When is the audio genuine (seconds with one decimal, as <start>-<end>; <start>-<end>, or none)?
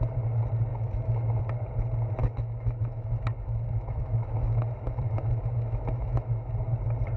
0.0-0.7; 1.4-2.2; 6.5-7.2